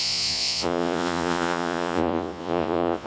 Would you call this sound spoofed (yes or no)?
yes